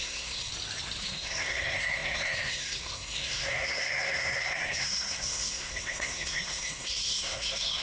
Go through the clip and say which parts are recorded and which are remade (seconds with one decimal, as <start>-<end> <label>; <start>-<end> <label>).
0.0-0.5 remade; 0.5-1.0 recorded; 1.0-7.8 remade